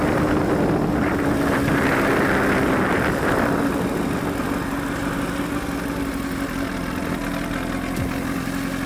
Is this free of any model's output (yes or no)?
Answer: yes